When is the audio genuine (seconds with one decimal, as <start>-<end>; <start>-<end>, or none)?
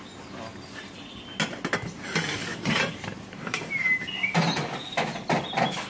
0.0-2.5; 4.1-5.9